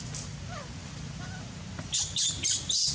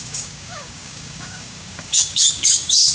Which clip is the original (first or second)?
first